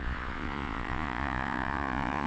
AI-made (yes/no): yes